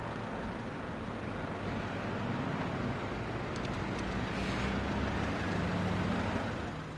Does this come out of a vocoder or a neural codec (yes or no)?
no